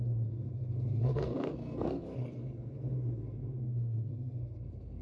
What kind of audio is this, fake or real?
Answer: fake